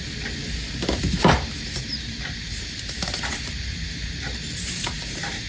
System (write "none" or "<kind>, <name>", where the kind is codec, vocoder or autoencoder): vocoder, BigVGAN v2